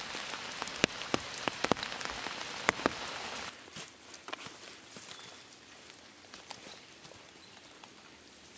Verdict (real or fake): real